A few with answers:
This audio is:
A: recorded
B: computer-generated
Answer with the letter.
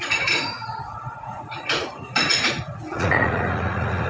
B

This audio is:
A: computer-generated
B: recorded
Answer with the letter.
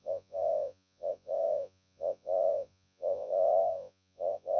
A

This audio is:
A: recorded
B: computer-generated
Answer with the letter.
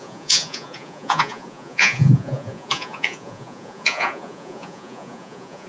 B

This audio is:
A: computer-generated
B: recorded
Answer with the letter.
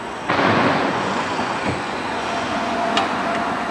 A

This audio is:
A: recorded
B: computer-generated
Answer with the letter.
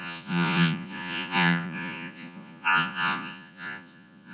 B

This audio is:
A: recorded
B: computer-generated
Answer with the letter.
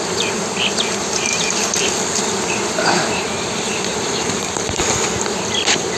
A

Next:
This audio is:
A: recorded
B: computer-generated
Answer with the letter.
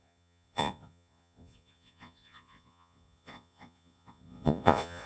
B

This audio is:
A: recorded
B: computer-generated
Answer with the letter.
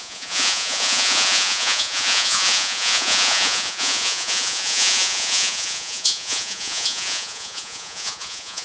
B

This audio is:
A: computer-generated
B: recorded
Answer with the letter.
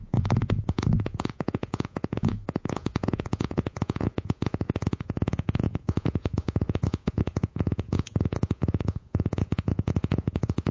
A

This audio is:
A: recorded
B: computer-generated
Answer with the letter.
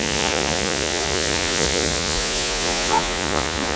B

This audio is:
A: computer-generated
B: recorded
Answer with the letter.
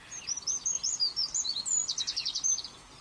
B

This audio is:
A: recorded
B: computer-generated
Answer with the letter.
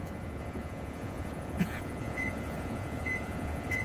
B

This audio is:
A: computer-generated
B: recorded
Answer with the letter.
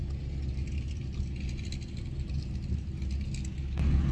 B